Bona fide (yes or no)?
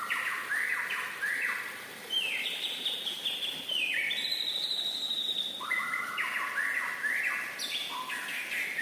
yes